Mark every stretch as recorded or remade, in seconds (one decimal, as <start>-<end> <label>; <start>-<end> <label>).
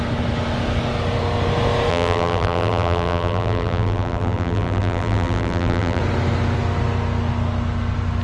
0.0-1.9 recorded; 1.9-6.0 remade; 6.0-8.2 recorded